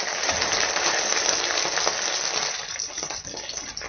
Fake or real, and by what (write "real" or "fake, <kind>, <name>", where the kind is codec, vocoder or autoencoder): real